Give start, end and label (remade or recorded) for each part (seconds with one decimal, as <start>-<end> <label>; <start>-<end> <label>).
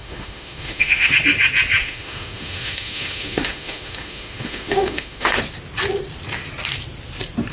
0.0-1.1 remade; 1.1-1.8 recorded; 1.8-5.4 remade; 5.4-7.5 recorded